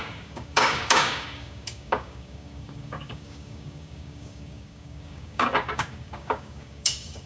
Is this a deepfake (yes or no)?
yes